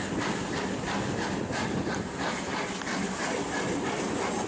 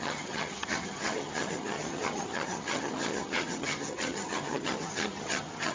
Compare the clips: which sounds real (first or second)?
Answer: first